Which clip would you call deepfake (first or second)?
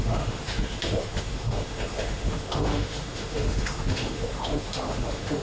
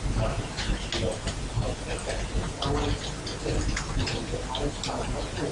first